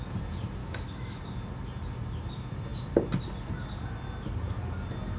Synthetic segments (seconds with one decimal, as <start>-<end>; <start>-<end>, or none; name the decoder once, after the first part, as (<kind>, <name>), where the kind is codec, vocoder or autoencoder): 0.6-1.2 (autoencoder, DAC-VAE)